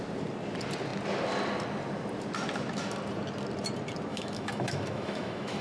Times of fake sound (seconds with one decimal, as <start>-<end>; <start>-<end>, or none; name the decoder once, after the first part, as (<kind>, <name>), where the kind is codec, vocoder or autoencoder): 4.1-5.6 (autoencoder, DAC-VAE)